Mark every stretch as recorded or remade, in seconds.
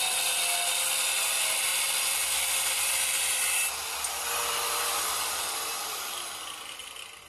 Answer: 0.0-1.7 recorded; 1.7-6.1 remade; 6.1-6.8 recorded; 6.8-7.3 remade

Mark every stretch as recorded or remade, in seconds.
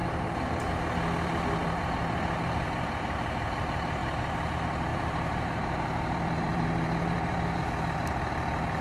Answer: 0.0-0.7 remade; 0.7-4.9 recorded; 4.9-7.6 remade; 7.6-8.8 recorded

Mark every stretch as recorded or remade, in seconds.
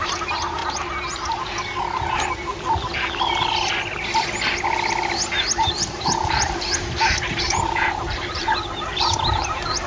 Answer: 0.0-0.6 remade; 0.6-5.7 recorded; 5.7-9.9 remade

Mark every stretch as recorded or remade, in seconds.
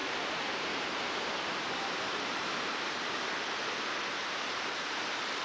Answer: 0.0-3.2 remade; 3.2-5.4 recorded